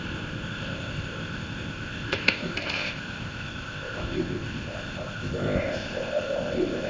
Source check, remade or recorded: remade